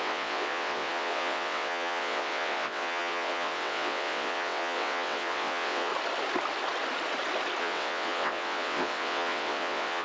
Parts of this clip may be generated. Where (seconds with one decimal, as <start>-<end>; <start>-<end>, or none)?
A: 0.0-5.9; 7.6-10.0